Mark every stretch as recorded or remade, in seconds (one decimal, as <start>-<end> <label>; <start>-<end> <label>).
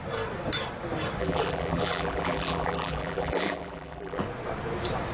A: 0.0-1.2 recorded; 1.2-4.2 remade; 4.2-5.1 recorded